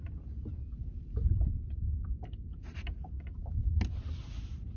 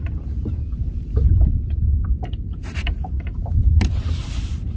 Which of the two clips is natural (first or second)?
first